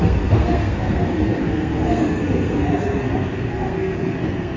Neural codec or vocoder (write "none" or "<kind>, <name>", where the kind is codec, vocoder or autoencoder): codec, SNAC